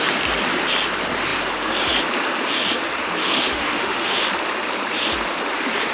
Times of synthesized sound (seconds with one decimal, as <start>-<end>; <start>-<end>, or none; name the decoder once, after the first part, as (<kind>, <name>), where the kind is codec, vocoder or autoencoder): 3.2-4.2 (autoencoder, DAC-VAE)